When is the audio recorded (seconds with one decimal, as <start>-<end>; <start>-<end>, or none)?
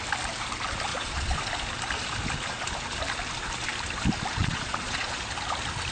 0.0-0.9; 1.4-4.4; 5.2-5.9